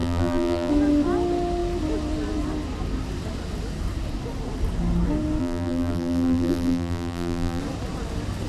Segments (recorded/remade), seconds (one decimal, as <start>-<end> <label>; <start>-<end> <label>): 0.0-0.7 remade; 0.7-5.4 recorded; 5.4-7.6 remade; 7.6-8.5 recorded